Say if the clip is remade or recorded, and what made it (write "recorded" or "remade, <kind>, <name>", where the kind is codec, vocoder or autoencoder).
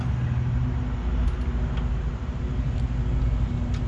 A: recorded